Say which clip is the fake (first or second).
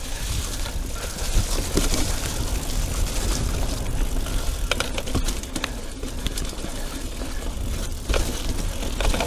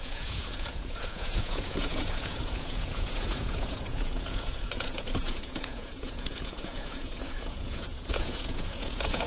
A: second